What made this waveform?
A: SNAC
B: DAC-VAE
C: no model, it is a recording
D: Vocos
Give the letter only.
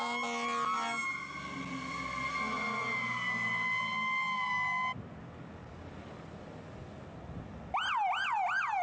C